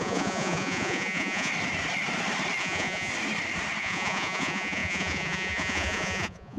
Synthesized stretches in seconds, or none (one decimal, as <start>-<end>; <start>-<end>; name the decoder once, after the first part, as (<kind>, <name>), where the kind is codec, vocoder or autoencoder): 0.0-1.5 (vocoder, Vocos); 2.6-3.1; 3.8-6.6